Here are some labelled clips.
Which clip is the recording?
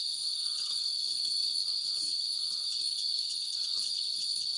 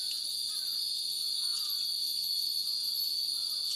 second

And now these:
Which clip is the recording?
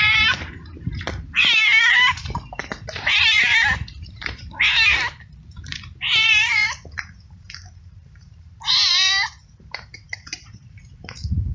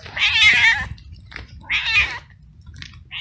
second